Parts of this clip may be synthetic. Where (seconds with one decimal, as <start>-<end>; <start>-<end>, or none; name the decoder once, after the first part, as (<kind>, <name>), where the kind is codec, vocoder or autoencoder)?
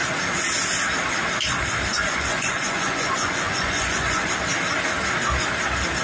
1.9-4.3 (vocoder, Vocos)